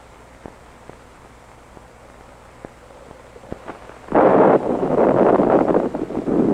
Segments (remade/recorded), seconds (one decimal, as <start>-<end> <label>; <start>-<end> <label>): 0.0-4.3 recorded; 4.3-5.0 remade; 5.0-6.5 recorded